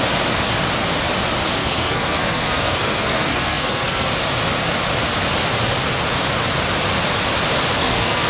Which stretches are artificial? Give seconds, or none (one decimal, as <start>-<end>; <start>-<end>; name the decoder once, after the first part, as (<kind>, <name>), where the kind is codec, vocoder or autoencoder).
1.6-4.1 (codec, SNAC); 7.8-8.3